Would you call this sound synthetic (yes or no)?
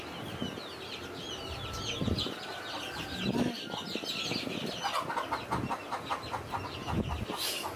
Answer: no